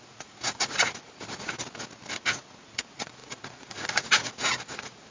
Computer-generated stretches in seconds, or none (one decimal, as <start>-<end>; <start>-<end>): 0.0-1.6; 2.1-5.1

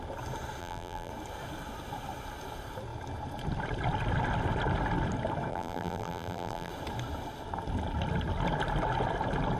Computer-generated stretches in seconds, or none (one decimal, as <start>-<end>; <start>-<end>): 0.6-1.1; 5.5-6.7

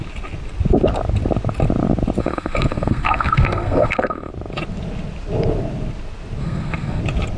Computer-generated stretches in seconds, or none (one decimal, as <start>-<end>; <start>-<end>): 2.2-4.3; 6.4-7.0

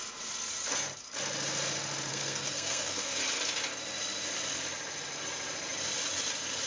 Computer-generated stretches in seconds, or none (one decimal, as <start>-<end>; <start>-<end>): 2.1-3.2

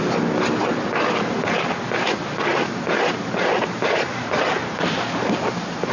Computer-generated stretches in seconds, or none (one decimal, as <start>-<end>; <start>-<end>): 2.5-5.0

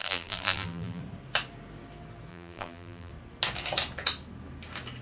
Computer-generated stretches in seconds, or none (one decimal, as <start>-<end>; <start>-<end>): 0.0-1.0; 2.3-3.1

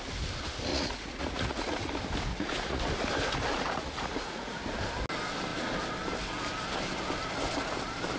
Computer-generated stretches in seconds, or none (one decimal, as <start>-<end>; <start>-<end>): 0.7-1.9; 2.3-2.8; 3.5-4.6

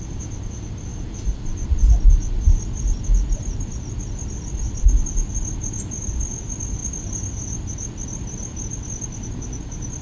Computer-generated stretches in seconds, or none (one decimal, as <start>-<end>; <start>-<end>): none